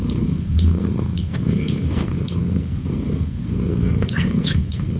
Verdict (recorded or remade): remade